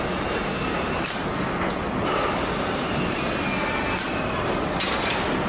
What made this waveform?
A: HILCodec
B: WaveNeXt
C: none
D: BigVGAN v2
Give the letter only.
C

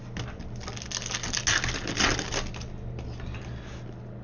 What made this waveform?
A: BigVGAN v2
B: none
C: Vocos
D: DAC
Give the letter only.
B